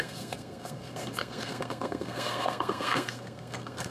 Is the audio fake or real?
fake